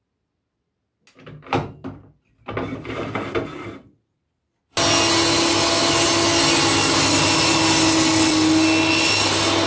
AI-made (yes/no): no